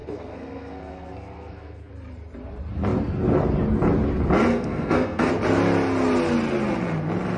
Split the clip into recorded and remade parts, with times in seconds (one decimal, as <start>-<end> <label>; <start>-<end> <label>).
0.0-1.9 remade; 1.9-4.5 recorded; 4.5-5.3 remade; 5.3-7.4 recorded